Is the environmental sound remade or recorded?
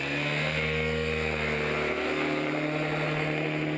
recorded